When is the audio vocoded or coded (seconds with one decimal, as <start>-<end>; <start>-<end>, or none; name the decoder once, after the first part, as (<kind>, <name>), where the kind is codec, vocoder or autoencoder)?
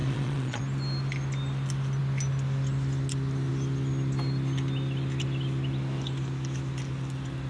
0.0-0.6 (vocoder, Vocos)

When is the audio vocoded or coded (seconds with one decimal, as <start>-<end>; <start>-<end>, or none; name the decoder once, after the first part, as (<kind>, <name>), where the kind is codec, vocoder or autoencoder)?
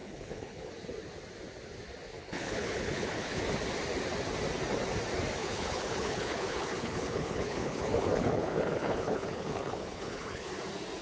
0.0-0.7 (codec, HILCodec); 2.2-3.4; 5.4-10.5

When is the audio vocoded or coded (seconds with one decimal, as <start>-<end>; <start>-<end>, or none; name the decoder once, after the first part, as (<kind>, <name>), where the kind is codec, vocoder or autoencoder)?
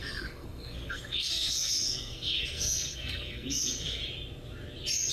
0.0-4.0 (codec, SNAC)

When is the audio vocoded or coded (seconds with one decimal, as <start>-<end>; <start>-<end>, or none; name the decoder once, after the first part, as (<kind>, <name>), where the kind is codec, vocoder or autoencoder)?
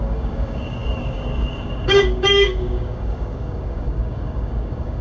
0.0-5.0 (codec, DAC)